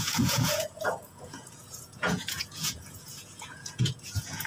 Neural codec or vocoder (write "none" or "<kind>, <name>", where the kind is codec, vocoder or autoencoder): vocoder, Vocos